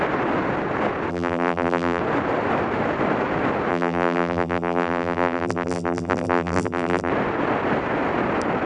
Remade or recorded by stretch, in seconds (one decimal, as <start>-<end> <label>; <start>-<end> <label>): 0.0-1.1 recorded; 1.1-2.0 remade; 2.0-3.7 recorded; 3.7-7.1 remade; 7.1-8.7 recorded